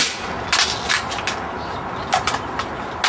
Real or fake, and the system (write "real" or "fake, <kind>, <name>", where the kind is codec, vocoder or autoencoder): real